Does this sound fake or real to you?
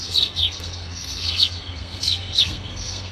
fake